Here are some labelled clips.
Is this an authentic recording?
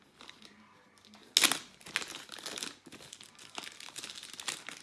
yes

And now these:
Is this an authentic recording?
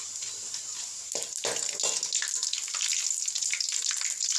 yes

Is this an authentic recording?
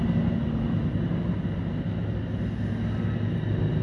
yes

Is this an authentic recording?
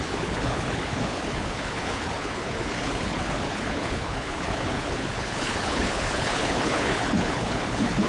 no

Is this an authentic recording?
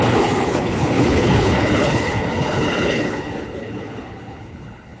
no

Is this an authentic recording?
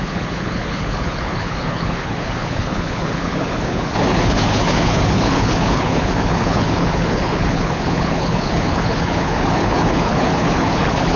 no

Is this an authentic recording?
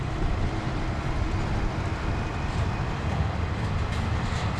yes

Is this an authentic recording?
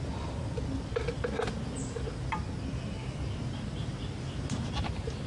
yes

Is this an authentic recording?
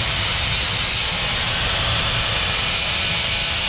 yes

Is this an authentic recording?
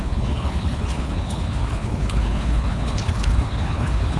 no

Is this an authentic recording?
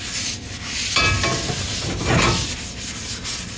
yes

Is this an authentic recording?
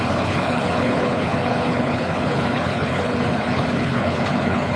no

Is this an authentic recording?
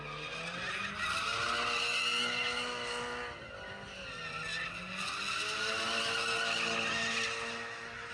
yes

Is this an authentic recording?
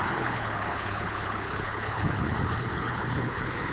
no